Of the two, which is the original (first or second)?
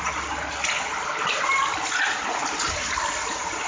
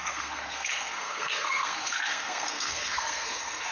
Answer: first